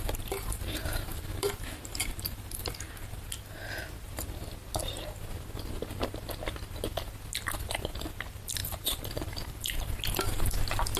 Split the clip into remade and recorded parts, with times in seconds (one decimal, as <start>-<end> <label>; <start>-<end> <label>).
0.0-0.8 recorded; 0.8-2.7 remade; 2.7-8.6 recorded; 8.6-9.8 remade; 9.8-11.0 recorded